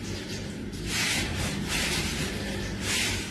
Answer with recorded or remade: remade